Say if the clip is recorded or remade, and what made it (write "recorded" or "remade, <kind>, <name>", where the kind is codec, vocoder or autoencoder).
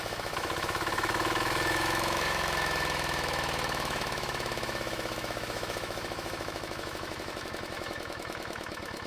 remade, autoencoder, DAC-VAE